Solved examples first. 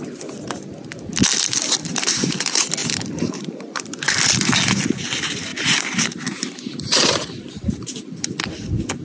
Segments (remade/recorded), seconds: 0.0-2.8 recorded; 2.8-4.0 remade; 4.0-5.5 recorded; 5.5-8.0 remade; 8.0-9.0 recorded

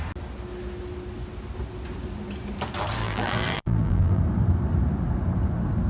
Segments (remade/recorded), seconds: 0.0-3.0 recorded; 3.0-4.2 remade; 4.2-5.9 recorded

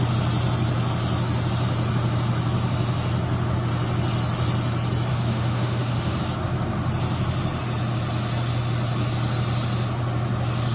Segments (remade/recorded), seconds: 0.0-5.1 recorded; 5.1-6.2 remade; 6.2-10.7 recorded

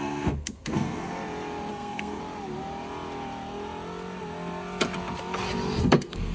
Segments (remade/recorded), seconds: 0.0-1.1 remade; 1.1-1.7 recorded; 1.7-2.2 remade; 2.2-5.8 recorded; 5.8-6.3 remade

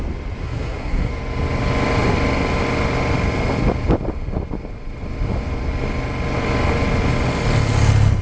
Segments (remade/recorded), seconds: 0.0-0.4 recorded; 0.4-1.1 remade; 1.1-8.2 recorded

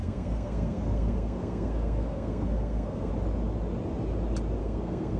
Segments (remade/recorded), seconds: 0.0-3.1 remade; 3.1-4.6 recorded; 4.6-5.2 remade

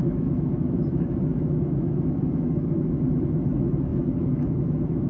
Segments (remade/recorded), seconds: 0.0-5.1 remade

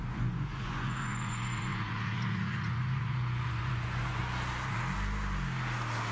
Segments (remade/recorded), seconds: 0.0-4.2 remade; 4.2-6.1 recorded